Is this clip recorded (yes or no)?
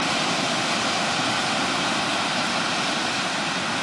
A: yes